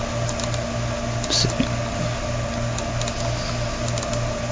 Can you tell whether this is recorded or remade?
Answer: recorded